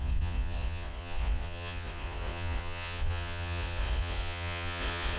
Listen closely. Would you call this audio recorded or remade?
remade